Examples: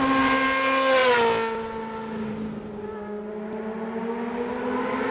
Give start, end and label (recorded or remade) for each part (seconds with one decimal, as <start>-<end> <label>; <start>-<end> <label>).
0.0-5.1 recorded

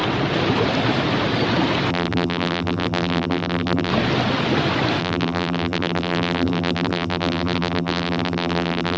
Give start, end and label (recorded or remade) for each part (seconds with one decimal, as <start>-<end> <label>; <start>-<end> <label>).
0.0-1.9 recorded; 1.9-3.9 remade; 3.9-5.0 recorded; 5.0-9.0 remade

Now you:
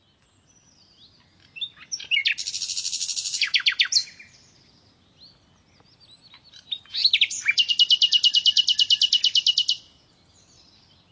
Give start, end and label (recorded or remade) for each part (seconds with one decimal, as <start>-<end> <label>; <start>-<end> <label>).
0.0-7.0 recorded; 7.0-7.7 remade; 7.7-11.1 recorded